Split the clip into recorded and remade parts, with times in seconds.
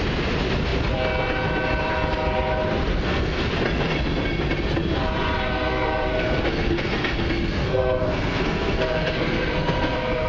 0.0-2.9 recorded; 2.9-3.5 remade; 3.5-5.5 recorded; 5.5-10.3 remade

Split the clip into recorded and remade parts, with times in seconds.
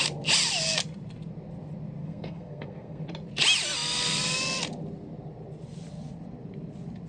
0.0-2.0 recorded; 2.0-3.0 remade; 3.0-7.1 recorded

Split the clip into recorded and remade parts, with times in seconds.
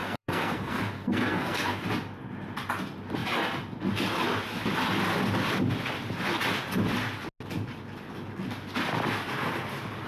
0.0-1.8 remade; 1.8-10.1 recorded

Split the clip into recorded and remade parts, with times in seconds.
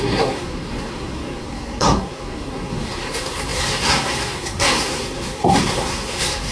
0.0-6.5 remade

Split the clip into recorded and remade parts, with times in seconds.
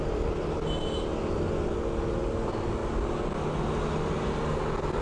0.0-5.0 recorded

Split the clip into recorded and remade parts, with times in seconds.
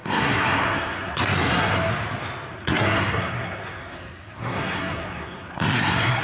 0.0-1.9 remade; 1.9-2.5 recorded; 2.5-6.2 remade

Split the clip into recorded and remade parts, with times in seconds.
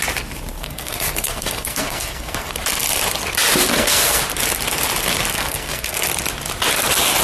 0.0-0.5 recorded; 0.5-2.5 remade; 2.5-3.7 recorded; 3.7-4.2 remade; 4.2-5.3 recorded; 5.3-6.0 remade; 6.0-7.2 recorded